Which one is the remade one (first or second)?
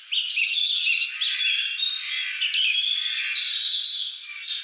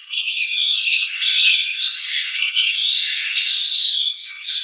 second